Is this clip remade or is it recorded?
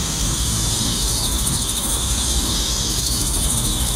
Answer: remade